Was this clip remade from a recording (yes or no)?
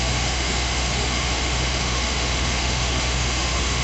yes